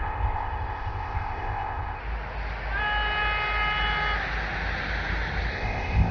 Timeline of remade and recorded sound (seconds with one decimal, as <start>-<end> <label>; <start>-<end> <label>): 0.0-2.0 remade; 2.0-5.5 recorded; 5.5-6.1 remade